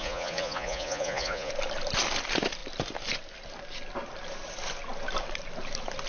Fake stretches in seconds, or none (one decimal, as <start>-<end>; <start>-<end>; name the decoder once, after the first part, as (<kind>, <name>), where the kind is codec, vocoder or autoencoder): 0.0-1.5 (vocoder, Vocos)